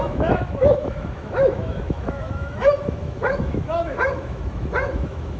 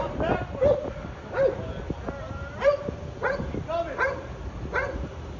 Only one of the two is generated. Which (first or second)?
first